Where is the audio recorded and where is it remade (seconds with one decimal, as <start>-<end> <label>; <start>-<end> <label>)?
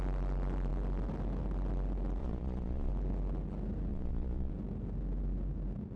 0.0-2.2 recorded; 2.2-2.9 remade; 2.9-3.9 recorded; 3.9-4.5 remade; 4.5-6.0 recorded